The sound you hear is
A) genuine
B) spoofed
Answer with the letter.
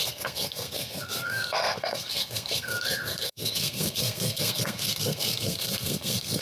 B